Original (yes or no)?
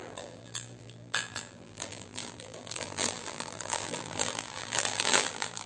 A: no